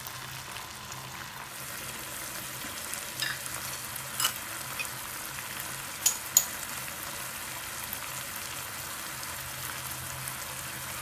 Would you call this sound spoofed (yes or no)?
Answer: no